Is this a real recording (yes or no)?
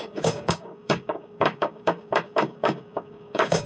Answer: no